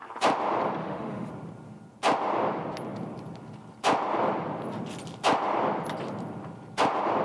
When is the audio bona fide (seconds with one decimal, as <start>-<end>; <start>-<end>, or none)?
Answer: 0.0-0.8; 1.3-7.2